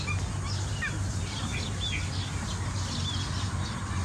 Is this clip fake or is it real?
real